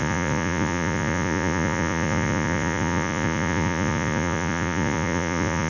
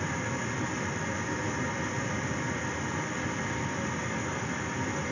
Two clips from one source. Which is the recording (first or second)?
second